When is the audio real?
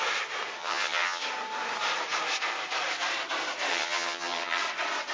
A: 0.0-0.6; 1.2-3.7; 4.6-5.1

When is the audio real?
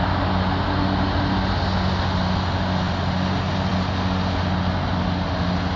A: 0.0-5.8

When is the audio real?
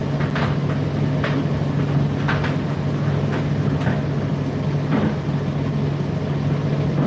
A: 0.0-7.1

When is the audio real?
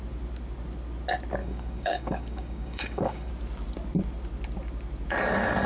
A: 0.0-1.4; 3.3-5.7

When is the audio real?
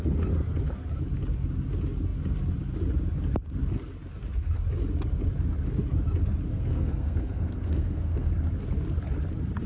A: 0.0-6.5; 8.3-9.7